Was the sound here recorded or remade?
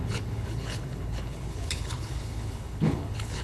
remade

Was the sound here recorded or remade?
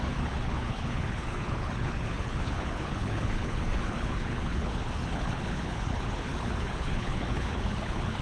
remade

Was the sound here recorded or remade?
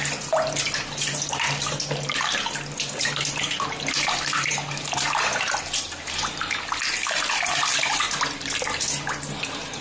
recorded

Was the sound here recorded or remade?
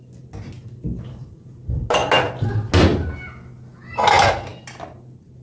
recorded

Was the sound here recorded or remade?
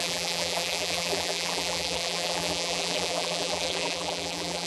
remade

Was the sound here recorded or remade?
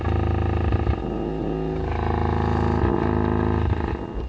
recorded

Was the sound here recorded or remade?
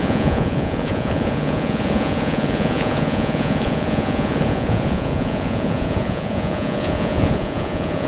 remade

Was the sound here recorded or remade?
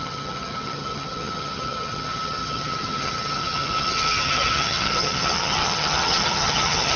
remade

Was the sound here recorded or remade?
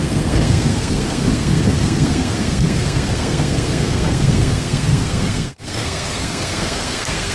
remade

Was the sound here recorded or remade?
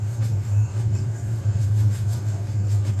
remade